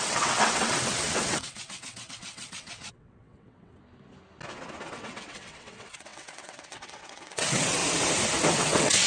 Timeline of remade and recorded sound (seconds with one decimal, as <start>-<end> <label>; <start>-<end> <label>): 0.0-3.8 remade; 3.8-4.9 recorded; 4.9-7.8 remade; 7.8-8.6 recorded; 8.6-9.1 remade